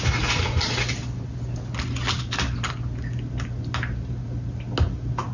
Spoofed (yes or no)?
no